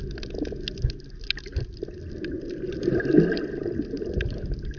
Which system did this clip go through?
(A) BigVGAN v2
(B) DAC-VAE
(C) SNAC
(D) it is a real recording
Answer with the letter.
D